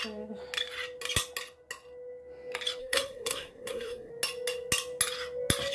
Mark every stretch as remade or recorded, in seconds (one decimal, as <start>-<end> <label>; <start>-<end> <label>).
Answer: 0.0-2.8 recorded; 2.8-4.1 remade; 4.1-5.7 recorded